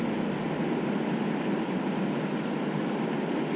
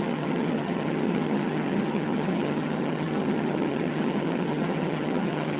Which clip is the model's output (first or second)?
second